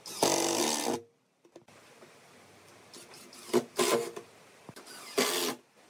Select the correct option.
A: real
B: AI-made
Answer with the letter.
A